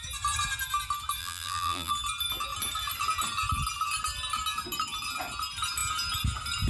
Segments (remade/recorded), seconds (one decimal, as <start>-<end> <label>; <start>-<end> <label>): 0.0-1.2 recorded; 1.2-1.9 remade; 1.9-6.7 recorded